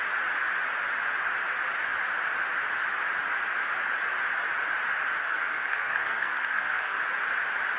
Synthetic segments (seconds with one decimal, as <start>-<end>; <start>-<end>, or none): 5.2-7.0